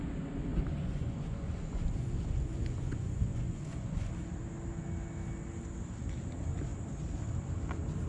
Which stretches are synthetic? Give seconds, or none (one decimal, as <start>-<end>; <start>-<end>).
0.5-4.1